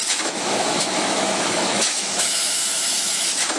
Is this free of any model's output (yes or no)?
no